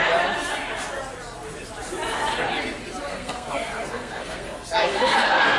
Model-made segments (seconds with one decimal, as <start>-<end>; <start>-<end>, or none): 3.1-5.6